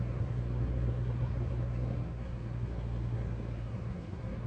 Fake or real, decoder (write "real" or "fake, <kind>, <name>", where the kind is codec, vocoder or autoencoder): fake, codec, SNAC